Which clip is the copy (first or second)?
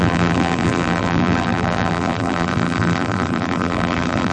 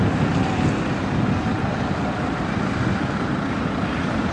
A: first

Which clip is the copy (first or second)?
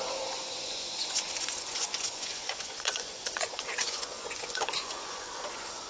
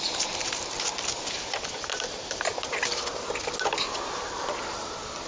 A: first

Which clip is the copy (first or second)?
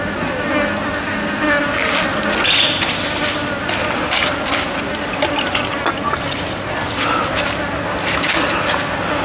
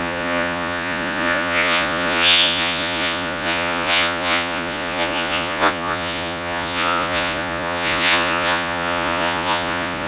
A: second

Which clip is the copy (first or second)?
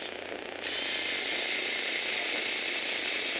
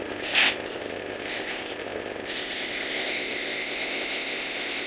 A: second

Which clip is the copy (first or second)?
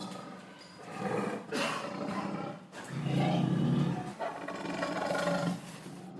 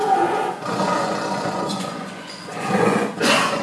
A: second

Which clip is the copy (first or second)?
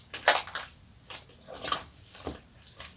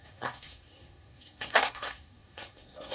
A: second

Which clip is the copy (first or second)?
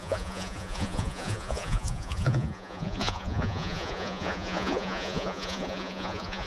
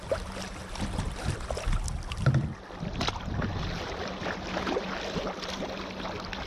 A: first